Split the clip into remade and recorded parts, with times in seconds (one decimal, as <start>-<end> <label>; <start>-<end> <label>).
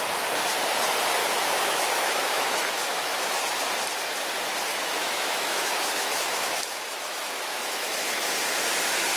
0.0-1.2 recorded; 1.2-3.7 remade; 3.7-4.7 recorded; 4.7-8.2 remade; 8.2-9.2 recorded